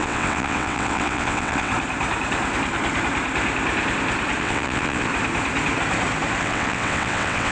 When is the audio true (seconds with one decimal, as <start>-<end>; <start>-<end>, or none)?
1.7-4.4; 5.1-6.4